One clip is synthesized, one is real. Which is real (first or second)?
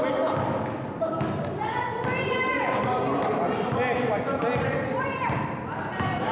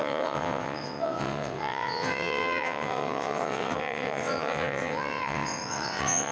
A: first